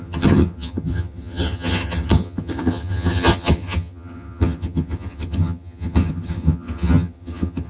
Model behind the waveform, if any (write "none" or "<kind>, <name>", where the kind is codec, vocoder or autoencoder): vocoder, HiFi-GAN